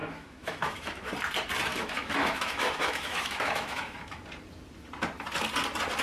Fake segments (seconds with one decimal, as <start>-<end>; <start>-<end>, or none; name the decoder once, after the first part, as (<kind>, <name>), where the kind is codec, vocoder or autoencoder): 0.0-1.1 (autoencoder, DAC-VAE); 1.7-4.2